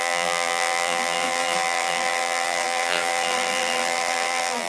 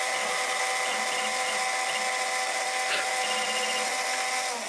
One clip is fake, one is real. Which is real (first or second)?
second